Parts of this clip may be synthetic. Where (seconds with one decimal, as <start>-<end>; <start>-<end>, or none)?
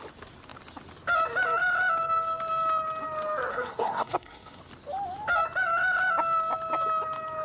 3.5-4.6